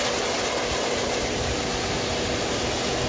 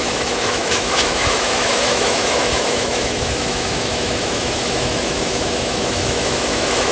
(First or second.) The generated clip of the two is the second